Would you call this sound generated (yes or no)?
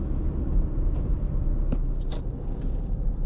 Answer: no